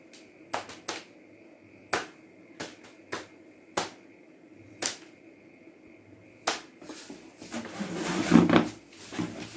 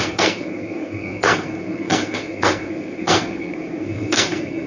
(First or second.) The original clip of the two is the first